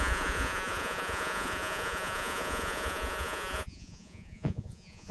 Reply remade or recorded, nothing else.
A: remade